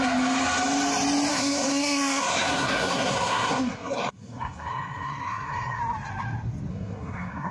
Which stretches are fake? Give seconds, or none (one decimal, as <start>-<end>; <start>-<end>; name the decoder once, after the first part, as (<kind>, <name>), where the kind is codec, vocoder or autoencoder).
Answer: 1.3-5.8 (codec, SNAC); 6.7-7.5

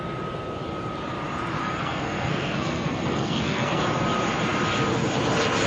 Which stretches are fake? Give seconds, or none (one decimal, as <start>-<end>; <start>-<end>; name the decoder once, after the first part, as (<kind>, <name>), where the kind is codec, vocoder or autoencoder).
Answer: 1.6-3.8 (codec, SNAC)

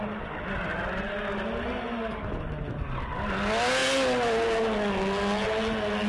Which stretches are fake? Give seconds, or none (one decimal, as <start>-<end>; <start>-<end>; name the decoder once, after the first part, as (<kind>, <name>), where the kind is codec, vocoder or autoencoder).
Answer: none

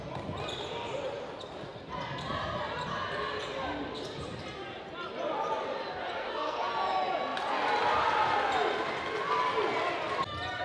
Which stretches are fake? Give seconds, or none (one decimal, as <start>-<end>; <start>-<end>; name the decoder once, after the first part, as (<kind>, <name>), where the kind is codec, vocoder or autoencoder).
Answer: 6.2-6.7 (codec, SNAC)

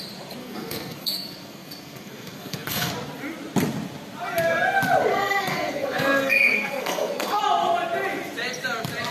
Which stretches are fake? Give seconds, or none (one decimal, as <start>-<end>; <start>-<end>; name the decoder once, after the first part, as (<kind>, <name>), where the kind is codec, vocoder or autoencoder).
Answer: 0.4-2.9 (codec, SNAC); 5.1-7.4

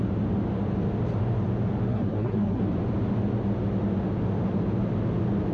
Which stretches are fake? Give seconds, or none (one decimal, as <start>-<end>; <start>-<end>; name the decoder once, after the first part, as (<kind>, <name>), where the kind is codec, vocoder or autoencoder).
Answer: 1.9-2.6 (codec, SNAC)